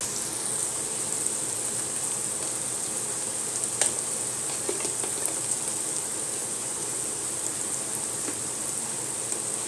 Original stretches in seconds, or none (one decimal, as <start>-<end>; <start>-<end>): 0.0-6.4; 7.0-9.7